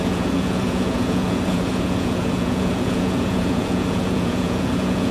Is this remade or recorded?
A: remade